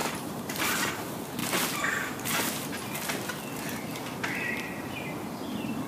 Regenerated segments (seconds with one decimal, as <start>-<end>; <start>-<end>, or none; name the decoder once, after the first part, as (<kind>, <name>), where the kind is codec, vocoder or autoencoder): 0.0-0.9 (vocoder, BigVGAN v2)